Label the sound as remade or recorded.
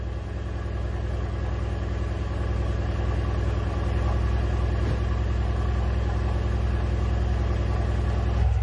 recorded